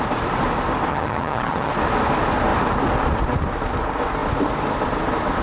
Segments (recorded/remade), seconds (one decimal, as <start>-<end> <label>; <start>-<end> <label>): 0.0-0.9 recorded; 0.9-1.7 remade; 1.7-5.4 recorded